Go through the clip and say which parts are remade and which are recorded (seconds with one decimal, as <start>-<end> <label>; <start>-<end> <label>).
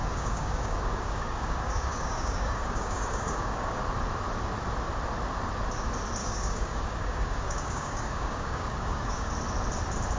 0.0-3.8 remade; 3.8-6.2 recorded; 6.2-9.3 remade; 9.3-10.2 recorded